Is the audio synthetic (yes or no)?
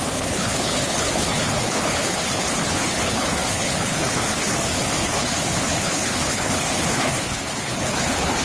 yes